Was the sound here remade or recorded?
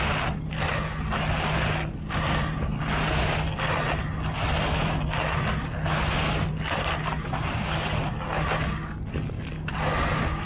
recorded